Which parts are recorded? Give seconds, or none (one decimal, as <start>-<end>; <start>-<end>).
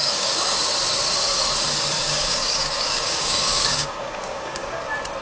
0.6-2.0; 4.8-5.2